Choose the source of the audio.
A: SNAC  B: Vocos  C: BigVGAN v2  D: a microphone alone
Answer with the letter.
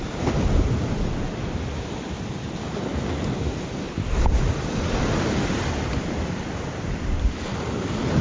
D